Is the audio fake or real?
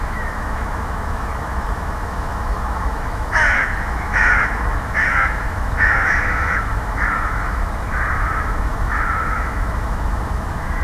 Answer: fake